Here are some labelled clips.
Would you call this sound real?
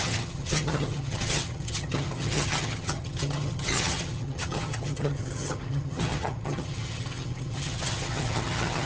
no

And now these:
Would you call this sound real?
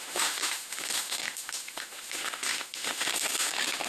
no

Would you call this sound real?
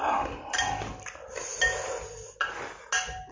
yes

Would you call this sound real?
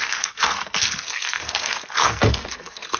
no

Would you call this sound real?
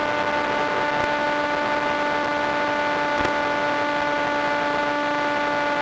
yes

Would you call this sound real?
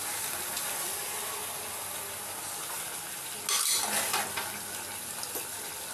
yes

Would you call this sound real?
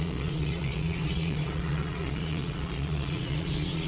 no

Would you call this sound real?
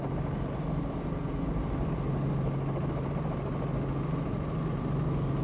yes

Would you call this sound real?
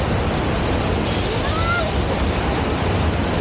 yes